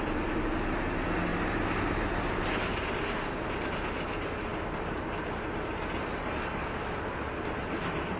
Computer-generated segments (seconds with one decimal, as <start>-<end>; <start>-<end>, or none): none